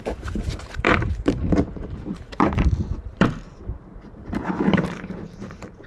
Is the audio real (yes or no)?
no